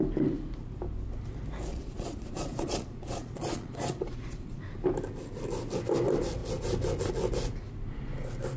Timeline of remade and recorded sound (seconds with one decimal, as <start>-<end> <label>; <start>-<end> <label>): 0.0-1.7 recorded; 1.7-4.6 remade; 4.6-8.6 recorded